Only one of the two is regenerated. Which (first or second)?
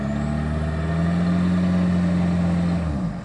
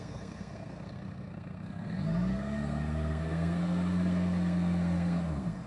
second